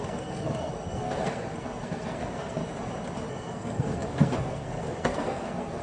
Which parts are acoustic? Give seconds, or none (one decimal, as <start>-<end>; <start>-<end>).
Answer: 2.6-3.3